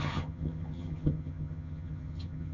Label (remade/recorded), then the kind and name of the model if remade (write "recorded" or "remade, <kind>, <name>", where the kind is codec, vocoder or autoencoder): remade, vocoder, HiFi-GAN